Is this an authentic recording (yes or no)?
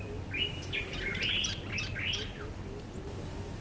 yes